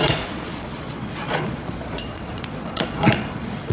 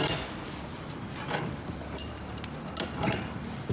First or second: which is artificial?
first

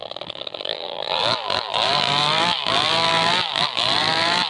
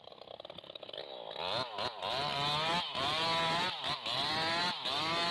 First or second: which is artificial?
first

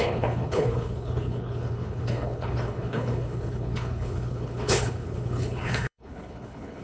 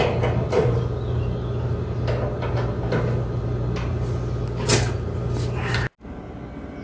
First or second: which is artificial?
first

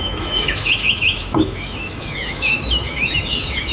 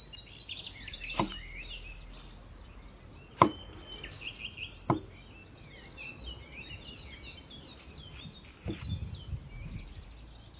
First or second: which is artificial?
first